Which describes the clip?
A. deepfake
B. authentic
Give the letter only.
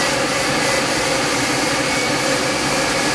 B